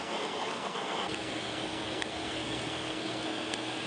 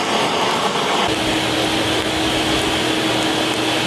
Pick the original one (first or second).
second